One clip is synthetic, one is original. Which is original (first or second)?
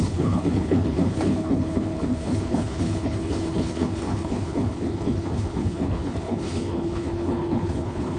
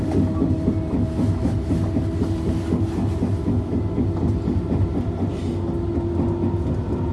second